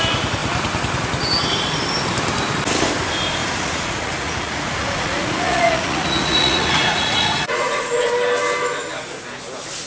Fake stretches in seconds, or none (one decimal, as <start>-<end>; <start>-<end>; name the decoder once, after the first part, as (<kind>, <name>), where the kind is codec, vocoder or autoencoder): 3.4-8.1 (vocoder, Vocos)